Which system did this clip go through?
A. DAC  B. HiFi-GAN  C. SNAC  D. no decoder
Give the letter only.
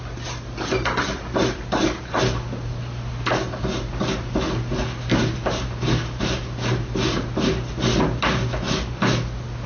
D